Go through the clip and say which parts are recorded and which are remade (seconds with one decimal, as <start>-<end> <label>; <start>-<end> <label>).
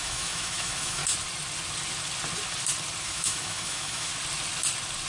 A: 0.0-1.0 remade; 1.0-3.0 recorded; 3.0-4.1 remade; 4.1-5.1 recorded